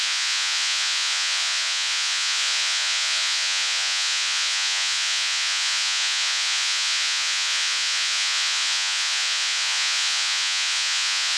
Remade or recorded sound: remade